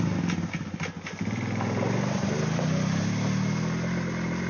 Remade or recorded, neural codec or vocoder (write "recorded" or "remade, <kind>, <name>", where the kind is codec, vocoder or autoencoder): recorded